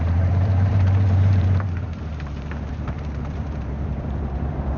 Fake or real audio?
fake